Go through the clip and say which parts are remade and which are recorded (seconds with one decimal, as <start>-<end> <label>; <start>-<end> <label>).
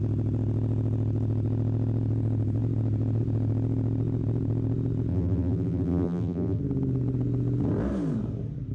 0.0-5.1 recorded; 5.1-6.6 remade; 6.6-8.7 recorded